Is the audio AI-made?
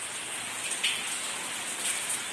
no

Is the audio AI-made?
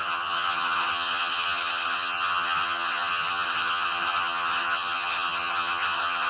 yes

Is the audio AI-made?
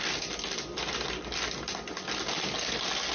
no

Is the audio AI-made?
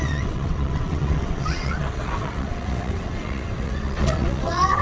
yes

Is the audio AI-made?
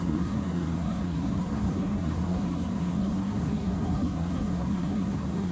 yes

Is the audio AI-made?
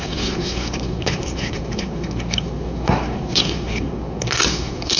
yes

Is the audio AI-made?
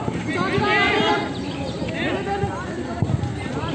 no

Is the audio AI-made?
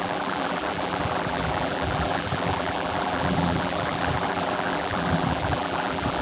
yes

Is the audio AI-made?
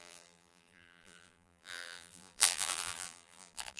yes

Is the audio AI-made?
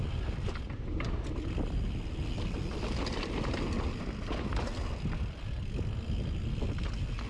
no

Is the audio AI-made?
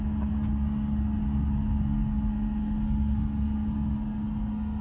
no